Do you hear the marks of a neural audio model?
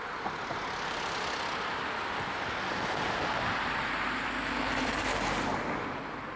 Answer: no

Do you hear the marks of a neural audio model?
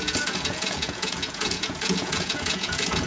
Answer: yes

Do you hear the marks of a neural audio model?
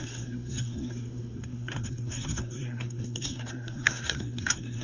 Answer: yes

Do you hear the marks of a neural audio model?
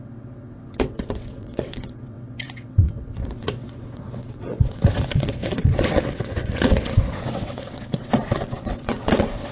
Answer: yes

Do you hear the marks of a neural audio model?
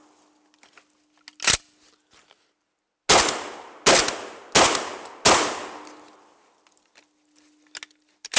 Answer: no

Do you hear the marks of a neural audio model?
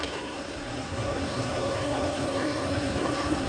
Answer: yes